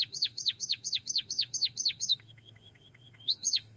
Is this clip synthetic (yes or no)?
yes